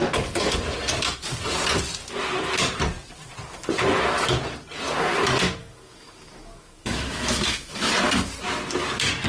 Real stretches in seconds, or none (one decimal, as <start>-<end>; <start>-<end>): 0.0-5.6; 7.9-9.3

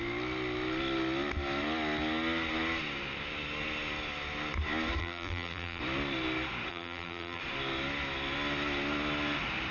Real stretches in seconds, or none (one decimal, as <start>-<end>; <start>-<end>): 0.0-5.0; 5.8-6.7; 7.4-9.7

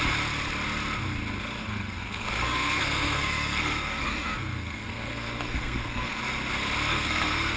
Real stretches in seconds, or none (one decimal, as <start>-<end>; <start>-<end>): 0.0-1.6; 6.2-6.9

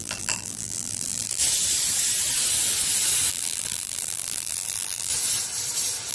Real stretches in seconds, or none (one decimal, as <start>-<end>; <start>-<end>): 1.4-3.3; 5.1-6.1

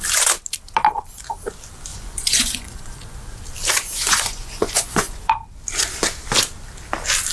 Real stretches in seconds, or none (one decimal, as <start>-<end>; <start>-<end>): 0.0-1.9; 3.4-3.9; 5.4-7.3